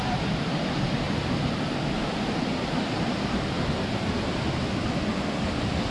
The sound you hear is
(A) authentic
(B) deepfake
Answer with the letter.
A